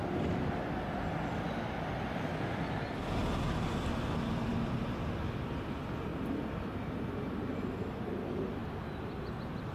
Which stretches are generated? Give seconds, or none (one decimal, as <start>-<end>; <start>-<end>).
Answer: 3.2-3.9; 6.1-6.9; 8.6-9.7